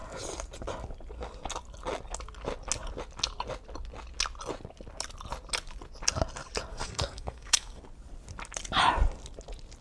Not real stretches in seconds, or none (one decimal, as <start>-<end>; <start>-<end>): 6.7-7.8